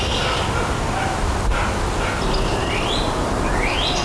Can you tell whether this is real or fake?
real